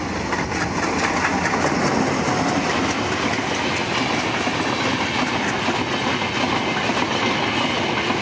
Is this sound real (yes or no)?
yes